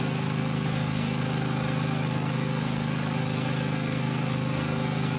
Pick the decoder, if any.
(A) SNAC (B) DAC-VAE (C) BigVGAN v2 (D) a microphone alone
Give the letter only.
A